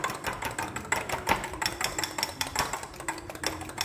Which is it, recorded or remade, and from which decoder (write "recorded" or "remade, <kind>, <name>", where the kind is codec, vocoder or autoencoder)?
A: recorded